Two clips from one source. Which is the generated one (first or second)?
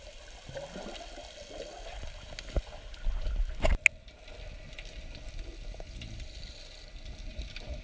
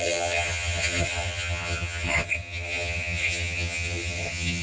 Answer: second